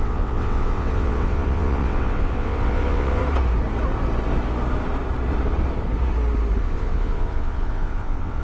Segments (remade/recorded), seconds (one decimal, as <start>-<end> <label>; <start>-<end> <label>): 0.0-3.2 remade; 3.2-6.6 recorded; 6.6-8.4 remade